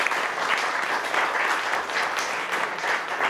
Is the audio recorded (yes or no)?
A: yes